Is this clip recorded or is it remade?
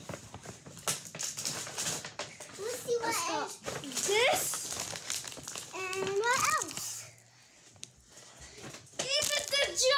recorded